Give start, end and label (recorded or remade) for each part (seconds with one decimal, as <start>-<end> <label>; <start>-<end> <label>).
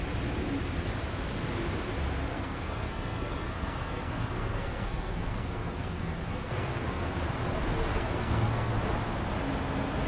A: 0.0-2.3 recorded; 2.3-7.2 remade; 7.2-7.9 recorded; 7.9-8.7 remade; 8.7-10.1 recorded